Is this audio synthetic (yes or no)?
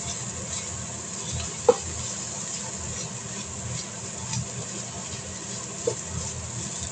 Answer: no